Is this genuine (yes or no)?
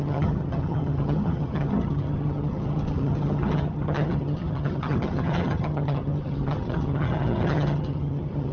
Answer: no